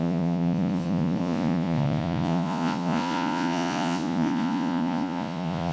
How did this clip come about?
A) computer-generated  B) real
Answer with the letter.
A